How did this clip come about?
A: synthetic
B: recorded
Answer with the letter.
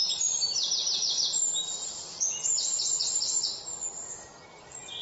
B